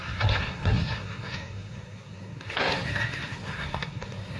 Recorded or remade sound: remade